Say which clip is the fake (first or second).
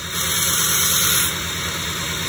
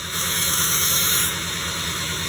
second